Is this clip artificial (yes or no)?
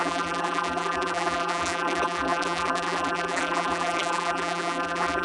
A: yes